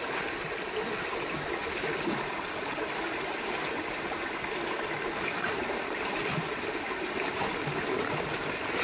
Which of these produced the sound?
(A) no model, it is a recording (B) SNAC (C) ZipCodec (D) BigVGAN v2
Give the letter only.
A